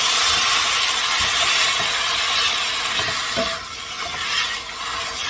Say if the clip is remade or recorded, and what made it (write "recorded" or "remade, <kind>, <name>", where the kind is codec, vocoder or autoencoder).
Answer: recorded